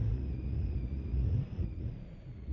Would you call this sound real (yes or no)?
no